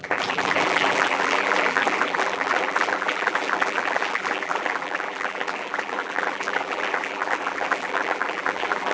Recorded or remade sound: remade